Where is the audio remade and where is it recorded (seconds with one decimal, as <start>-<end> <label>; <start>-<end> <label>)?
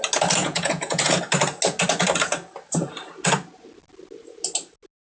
0.0-0.4 recorded; 0.4-1.2 remade; 1.2-5.0 recorded